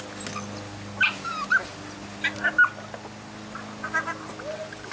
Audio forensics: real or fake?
real